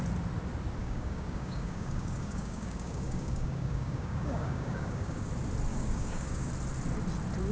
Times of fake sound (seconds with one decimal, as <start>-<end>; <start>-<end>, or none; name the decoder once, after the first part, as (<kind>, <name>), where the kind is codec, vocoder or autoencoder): 0.8-5.3 (codec, DAC); 5.7-6.5